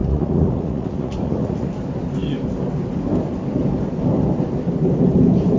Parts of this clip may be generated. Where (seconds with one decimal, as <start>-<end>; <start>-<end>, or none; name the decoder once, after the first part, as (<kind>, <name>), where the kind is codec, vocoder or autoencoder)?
0.0-1.7 (vocoder, Vocos)

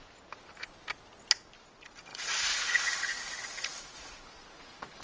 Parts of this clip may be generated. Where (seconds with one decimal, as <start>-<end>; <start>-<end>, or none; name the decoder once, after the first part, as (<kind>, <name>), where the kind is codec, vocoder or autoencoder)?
2.1-5.0 (vocoder, Vocos)